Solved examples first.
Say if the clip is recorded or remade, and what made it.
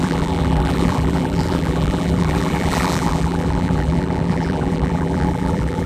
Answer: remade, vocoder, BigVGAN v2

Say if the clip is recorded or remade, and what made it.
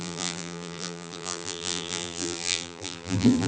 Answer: remade, vocoder, BigVGAN v2